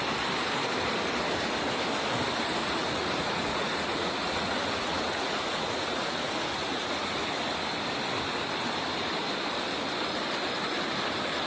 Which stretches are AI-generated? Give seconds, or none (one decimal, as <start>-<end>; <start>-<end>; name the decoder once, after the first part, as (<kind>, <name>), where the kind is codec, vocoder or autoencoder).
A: 2.6-7.3 (vocoder, Vocos)